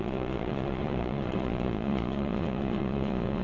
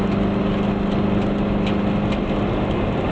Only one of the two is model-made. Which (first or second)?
first